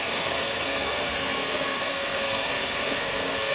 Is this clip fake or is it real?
fake